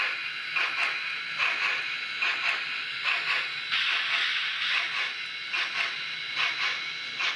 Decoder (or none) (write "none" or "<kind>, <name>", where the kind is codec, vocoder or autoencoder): none